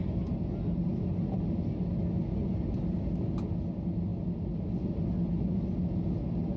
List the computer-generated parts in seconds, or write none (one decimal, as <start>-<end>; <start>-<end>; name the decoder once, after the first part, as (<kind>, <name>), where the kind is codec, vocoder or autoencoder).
none